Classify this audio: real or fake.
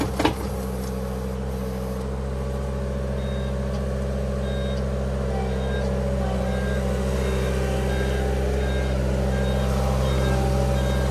real